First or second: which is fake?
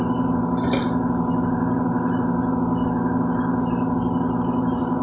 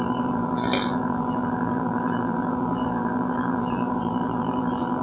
second